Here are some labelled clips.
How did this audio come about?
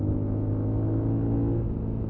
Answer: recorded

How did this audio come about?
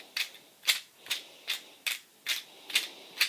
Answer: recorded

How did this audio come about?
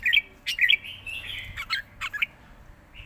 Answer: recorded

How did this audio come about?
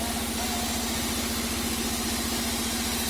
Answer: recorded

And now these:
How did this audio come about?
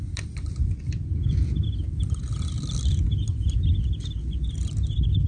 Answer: recorded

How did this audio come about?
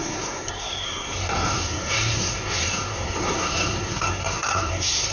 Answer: remade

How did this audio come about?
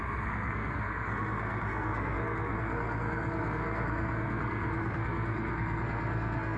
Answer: remade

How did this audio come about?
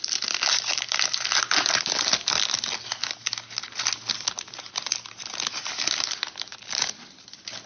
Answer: recorded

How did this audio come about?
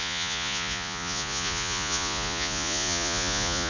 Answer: remade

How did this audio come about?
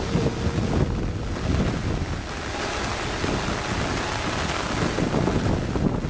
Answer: recorded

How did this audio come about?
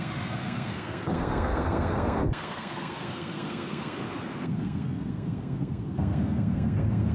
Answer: remade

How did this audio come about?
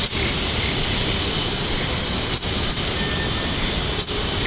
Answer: recorded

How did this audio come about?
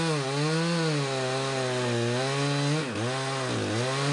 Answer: recorded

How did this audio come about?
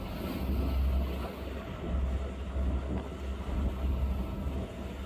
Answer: recorded